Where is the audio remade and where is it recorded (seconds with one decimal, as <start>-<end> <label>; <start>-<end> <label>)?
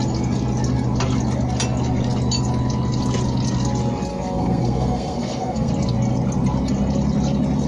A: 0.0-4.1 recorded; 4.1-5.7 remade; 5.7-7.7 recorded